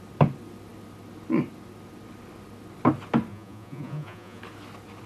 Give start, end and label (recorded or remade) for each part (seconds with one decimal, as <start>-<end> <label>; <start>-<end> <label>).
0.0-3.3 recorded; 3.3-4.4 remade; 4.4-5.1 recorded